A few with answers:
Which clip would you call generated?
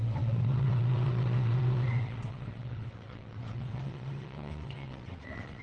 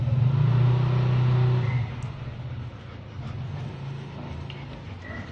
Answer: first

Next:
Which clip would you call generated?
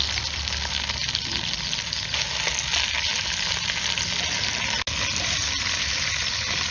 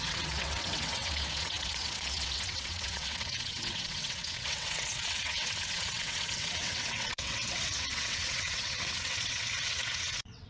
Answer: second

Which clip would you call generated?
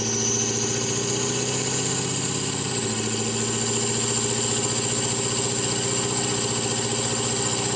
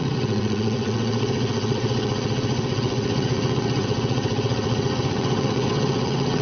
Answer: second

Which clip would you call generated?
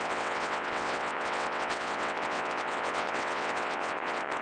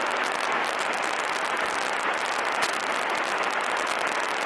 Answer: first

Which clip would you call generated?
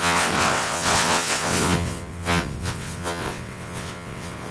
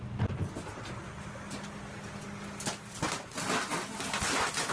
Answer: first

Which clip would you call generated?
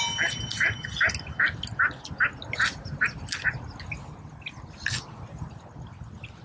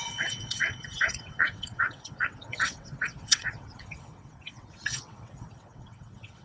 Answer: second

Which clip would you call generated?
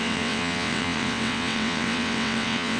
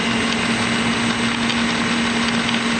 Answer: first